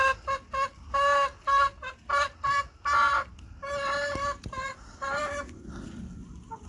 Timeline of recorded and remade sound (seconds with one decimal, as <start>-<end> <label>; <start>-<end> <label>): 0.0-6.7 recorded